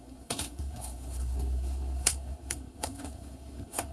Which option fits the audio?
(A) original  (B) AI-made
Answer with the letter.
B